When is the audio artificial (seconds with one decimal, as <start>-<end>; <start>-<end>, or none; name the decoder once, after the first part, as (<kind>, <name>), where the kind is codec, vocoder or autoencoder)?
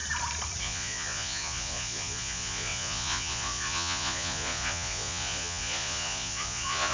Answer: 0.6-6.9 (vocoder, Vocos)